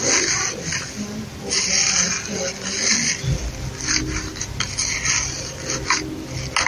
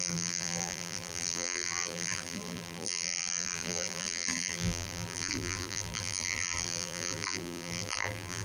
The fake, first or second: second